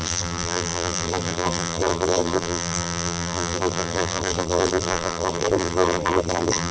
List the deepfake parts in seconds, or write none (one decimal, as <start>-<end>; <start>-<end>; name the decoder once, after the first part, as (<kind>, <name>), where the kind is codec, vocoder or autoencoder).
0.0-6.7 (vocoder, BigVGAN v2)